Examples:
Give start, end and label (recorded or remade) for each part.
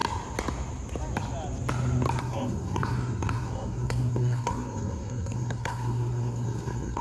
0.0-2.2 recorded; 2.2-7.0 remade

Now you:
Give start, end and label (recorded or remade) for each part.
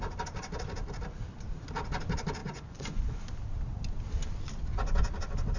0.0-2.4 recorded; 2.4-3.2 remade; 3.2-5.6 recorded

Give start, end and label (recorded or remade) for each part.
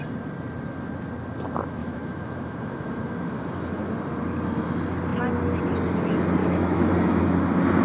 0.0-1.8 recorded; 1.8-3.9 remade; 3.9-6.4 recorded; 6.4-7.2 remade; 7.2-7.8 recorded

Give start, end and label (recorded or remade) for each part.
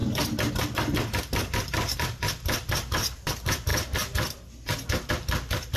0.0-0.5 recorded; 0.5-3.7 remade; 3.7-5.1 recorded; 5.1-5.8 remade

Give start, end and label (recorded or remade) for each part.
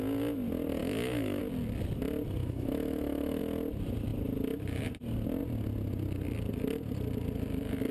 0.0-0.8 recorded; 0.8-1.4 remade; 1.4-2.4 recorded; 2.4-3.4 remade; 3.4-7.9 recorded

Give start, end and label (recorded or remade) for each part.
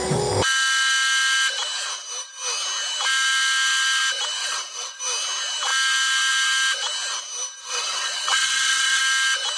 0.0-4.4 recorded; 4.4-5.0 remade; 5.0-7.6 recorded; 7.6-9.0 remade; 9.0-9.6 recorded